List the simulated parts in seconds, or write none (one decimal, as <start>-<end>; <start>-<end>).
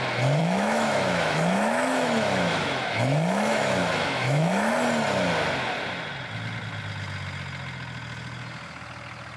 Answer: 0.4-4.7